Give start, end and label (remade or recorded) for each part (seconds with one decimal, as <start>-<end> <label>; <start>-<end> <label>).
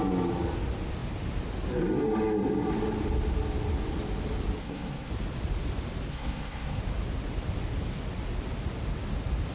0.0-4.6 recorded; 4.6-5.1 remade; 5.1-6.1 recorded; 6.1-6.8 remade; 6.8-9.5 recorded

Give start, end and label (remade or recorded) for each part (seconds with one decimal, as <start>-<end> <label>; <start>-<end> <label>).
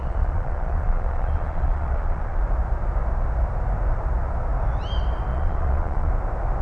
0.0-2.4 remade; 2.4-5.3 recorded; 5.3-6.1 remade; 6.1-6.6 recorded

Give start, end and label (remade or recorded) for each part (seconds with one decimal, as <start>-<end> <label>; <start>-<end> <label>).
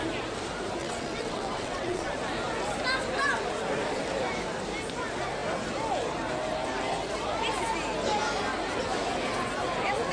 0.0-0.8 recorded; 0.8-2.1 remade; 2.1-10.1 recorded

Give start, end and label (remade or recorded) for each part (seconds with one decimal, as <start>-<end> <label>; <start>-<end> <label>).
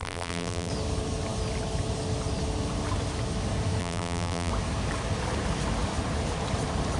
0.0-0.7 remade; 0.7-3.8 recorded; 3.8-4.5 remade; 4.5-7.0 recorded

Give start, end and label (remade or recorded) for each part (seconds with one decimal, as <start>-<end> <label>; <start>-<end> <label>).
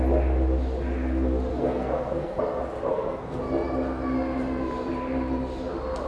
0.0-1.5 recorded; 1.5-2.4 remade; 2.4-2.9 recorded; 2.9-3.4 remade; 3.4-6.1 recorded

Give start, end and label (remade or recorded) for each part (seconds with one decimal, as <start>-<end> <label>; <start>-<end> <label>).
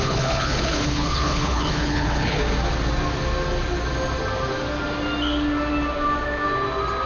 0.0-2.4 remade; 2.4-7.1 recorded